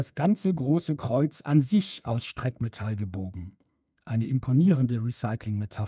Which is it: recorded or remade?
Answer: remade